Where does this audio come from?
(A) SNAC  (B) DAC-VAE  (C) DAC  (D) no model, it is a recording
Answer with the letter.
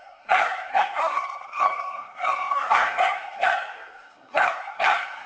A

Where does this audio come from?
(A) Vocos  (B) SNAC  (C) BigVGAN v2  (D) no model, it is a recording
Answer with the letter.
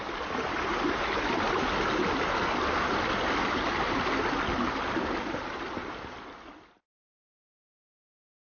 D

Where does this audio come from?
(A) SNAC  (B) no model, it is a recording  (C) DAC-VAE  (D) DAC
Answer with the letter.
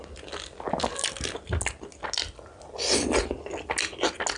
B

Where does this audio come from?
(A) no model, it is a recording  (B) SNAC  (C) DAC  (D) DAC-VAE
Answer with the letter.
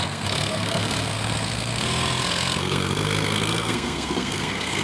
B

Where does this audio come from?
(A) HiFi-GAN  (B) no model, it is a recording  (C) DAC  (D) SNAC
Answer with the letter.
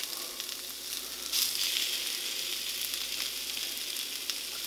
B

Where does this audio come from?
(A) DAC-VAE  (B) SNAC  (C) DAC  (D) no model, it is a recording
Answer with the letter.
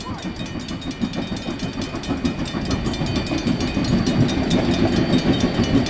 D